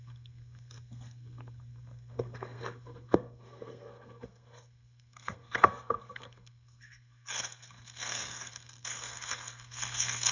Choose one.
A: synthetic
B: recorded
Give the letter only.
A